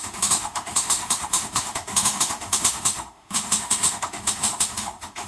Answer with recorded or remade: remade